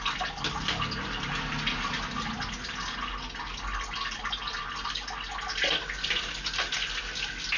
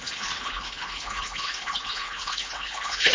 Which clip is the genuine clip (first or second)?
first